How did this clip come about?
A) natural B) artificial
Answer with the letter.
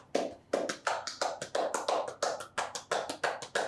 A